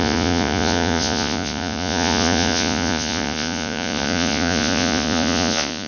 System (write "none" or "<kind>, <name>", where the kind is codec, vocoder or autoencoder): vocoder, Vocos